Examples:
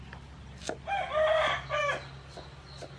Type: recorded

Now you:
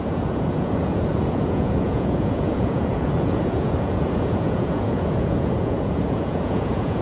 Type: remade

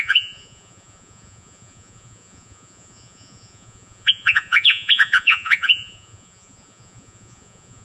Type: remade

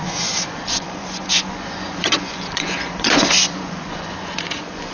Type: remade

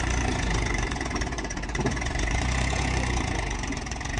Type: remade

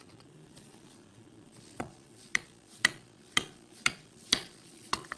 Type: remade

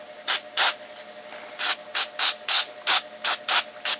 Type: recorded